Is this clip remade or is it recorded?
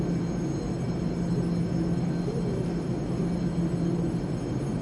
recorded